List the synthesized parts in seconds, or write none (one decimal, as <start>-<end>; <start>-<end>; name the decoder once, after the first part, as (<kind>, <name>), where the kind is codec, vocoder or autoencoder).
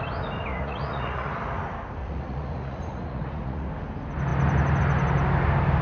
0.5-1.3 (vocoder, Vocos); 2.0-3.7